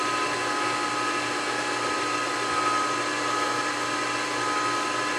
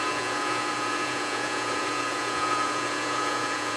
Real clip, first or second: first